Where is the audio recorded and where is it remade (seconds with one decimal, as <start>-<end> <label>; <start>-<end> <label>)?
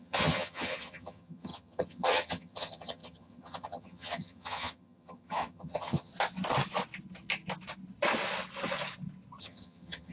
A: 0.0-6.1 remade; 6.1-9.4 recorded; 9.4-10.1 remade